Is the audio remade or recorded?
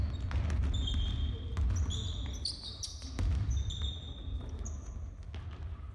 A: recorded